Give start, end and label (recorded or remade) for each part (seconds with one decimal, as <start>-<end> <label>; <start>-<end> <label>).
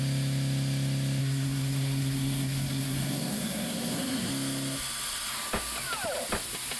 0.0-1.2 recorded; 1.2-4.3 remade; 4.3-6.8 recorded